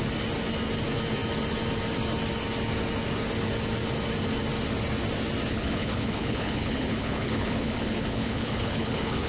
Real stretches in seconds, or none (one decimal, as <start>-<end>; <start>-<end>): 0.0-5.5